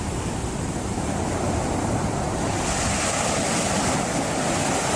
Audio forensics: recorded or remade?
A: recorded